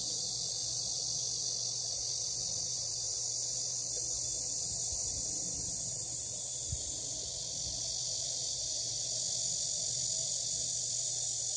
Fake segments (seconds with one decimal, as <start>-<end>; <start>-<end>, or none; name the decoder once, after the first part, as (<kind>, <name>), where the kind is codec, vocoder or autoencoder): 8.4-9.0 (vocoder, Vocos)